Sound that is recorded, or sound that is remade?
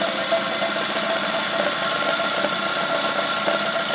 recorded